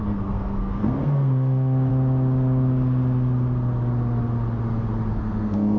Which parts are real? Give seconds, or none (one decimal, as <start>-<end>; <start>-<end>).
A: 1.9-5.1

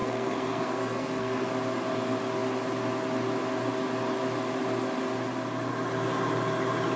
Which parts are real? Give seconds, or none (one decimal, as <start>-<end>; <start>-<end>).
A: 1.5-7.0

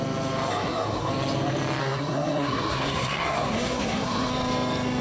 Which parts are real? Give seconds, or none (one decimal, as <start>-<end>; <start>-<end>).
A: 0.0-0.5; 1.1-1.8; 4.3-5.0